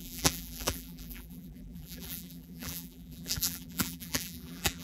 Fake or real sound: fake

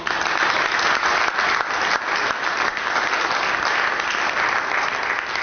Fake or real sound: real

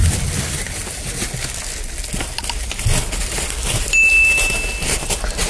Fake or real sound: real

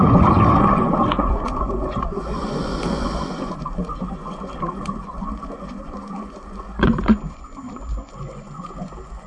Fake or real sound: fake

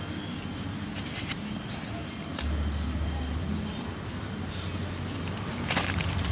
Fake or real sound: real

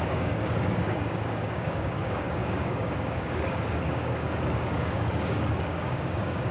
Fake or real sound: fake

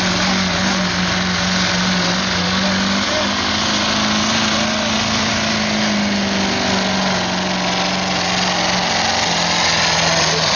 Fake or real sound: real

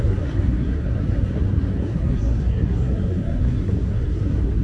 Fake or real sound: fake